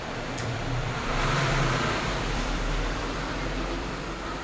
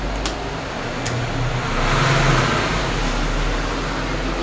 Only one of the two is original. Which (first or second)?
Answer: second